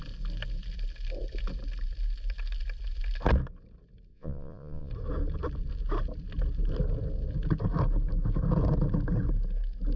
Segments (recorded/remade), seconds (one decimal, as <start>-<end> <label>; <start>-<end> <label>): 0.0-4.1 recorded; 4.1-4.9 remade; 4.9-10.0 recorded